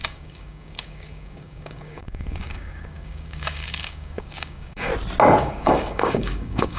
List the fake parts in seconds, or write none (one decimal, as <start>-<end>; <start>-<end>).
0.0-4.9; 5.4-6.8

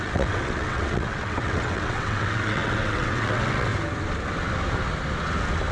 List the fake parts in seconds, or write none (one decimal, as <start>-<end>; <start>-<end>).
0.0-3.7

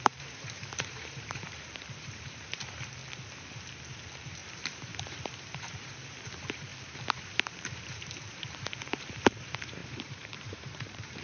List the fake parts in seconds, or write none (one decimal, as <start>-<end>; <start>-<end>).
0.0-3.0; 3.9-6.7; 7.2-11.2

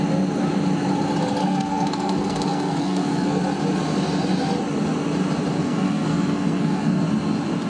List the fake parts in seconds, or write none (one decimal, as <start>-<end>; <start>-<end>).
1.4-3.4; 5.6-7.0

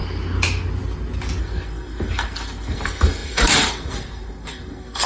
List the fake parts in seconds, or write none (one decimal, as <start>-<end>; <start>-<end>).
1.4-5.1

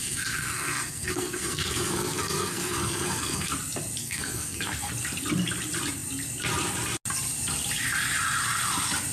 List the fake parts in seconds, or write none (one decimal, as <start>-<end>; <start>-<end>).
0.0-3.5; 4.0-4.9

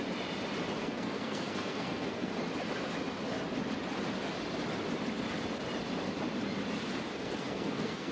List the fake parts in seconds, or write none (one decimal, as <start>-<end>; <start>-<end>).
0.8-2.3; 7.1-8.1

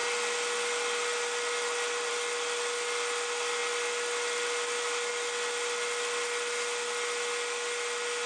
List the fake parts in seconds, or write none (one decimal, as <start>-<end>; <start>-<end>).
none